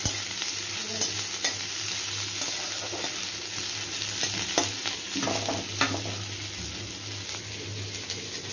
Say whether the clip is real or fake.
real